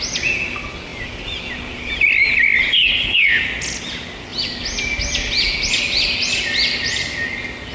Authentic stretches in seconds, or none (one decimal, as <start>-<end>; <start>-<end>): 0.0-2.7; 3.3-7.7